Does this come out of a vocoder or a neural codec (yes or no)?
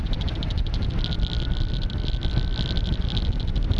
no